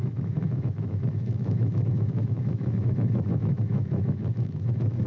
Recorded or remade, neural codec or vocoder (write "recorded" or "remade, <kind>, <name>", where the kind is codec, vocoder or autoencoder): remade, autoencoder, DAC-VAE